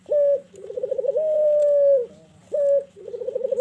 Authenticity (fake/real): real